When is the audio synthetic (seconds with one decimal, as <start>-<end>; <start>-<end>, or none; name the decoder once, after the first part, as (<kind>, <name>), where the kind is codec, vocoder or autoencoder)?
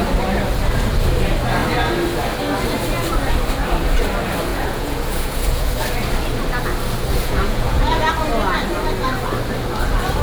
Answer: 4.5-5.8 (vocoder, Vocos); 7.1-8.1